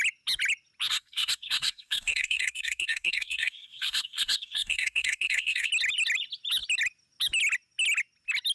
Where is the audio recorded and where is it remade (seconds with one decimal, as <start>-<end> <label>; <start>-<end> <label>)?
0.0-0.9 recorded; 0.9-5.7 remade; 5.7-8.5 recorded